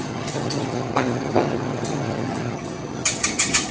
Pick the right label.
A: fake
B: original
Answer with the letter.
A